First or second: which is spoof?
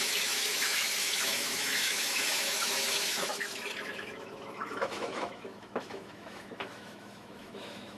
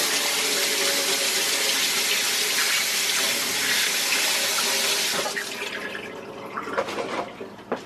first